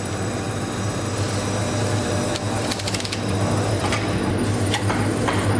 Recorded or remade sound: recorded